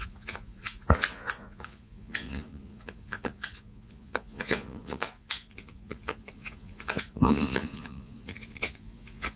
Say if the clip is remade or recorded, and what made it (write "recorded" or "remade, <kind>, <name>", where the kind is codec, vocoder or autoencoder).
remade, vocoder, Vocos